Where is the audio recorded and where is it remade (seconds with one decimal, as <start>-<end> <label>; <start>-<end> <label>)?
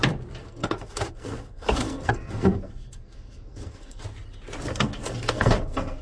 0.0-0.4 recorded; 0.4-4.0 remade; 4.0-4.7 recorded; 4.7-6.0 remade